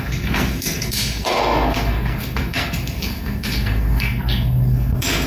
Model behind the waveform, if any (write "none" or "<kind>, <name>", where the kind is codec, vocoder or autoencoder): codec, SNAC